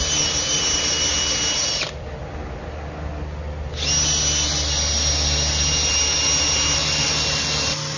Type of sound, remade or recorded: recorded